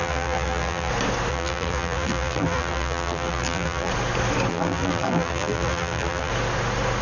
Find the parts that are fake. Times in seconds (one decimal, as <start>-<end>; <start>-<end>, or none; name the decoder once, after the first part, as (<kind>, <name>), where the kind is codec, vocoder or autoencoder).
0.0-0.9 (vocoder, BigVGAN v2); 1.3-3.9; 4.5-6.3